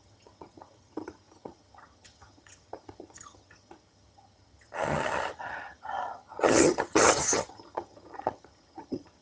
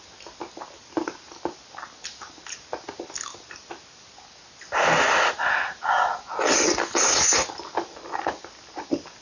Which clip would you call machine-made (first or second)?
first